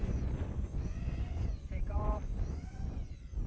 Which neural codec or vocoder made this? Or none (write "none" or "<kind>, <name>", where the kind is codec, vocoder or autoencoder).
vocoder, Vocos